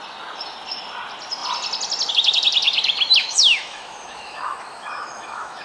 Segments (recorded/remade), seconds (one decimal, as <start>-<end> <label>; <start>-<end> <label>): 0.0-3.2 recorded; 3.2-5.6 remade